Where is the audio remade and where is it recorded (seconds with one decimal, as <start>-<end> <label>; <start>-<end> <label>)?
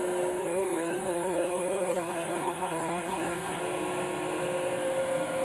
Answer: 0.0-0.4 recorded; 0.4-3.6 remade; 3.6-5.4 recorded